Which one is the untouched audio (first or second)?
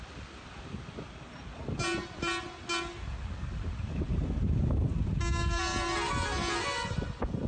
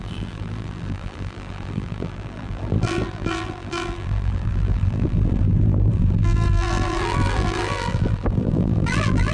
first